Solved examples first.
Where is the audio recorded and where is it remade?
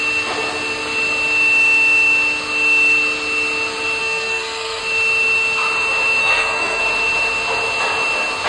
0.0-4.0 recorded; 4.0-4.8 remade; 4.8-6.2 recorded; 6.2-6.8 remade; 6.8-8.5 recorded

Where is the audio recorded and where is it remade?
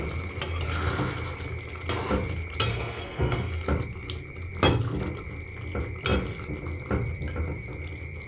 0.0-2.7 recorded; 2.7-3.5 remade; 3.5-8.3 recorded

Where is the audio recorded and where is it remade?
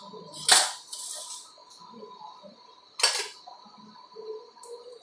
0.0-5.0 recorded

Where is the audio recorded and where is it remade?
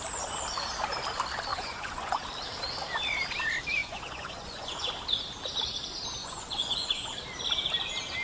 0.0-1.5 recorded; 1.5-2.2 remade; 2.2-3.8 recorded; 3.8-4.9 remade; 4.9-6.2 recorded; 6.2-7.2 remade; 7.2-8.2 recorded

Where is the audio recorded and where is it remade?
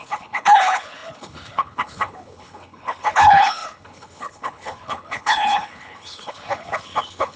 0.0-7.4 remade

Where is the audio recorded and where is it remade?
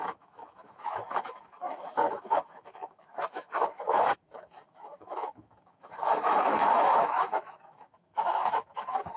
0.0-9.2 remade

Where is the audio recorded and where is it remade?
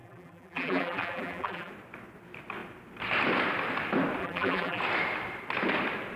0.0-1.7 remade; 1.7-4.2 recorded; 4.2-4.8 remade; 4.8-6.2 recorded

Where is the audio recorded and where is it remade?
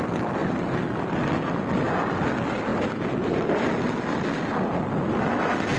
0.0-5.8 recorded